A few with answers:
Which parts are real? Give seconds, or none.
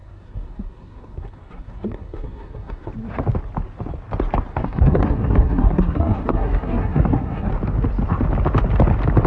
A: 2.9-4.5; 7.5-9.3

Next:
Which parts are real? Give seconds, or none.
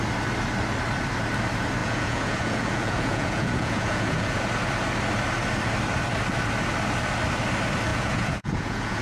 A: 0.0-1.8; 4.4-7.9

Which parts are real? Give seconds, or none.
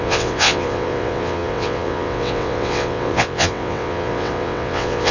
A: none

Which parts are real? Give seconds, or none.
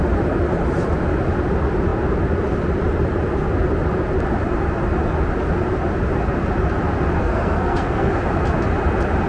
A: 0.0-7.2; 8.2-9.3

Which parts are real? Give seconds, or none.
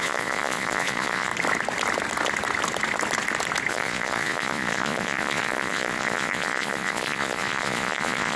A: 1.3-3.7